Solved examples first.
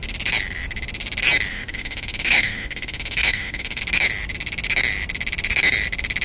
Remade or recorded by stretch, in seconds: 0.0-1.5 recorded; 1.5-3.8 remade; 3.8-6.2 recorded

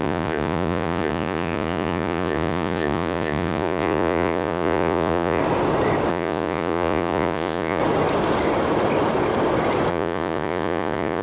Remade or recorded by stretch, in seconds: 0.0-5.4 remade; 5.4-6.1 recorded; 6.1-7.8 remade; 7.8-9.9 recorded; 9.9-11.2 remade